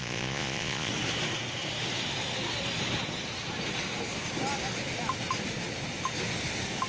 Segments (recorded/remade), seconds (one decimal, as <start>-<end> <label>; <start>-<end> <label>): 0.0-0.9 remade; 0.9-6.9 recorded